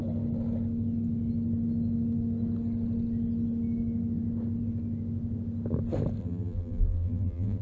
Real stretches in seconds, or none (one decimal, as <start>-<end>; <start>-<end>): 0.0-6.2